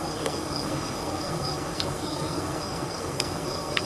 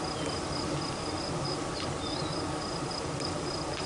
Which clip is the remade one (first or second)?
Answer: first